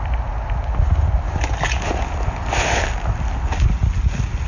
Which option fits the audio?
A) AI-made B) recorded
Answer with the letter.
B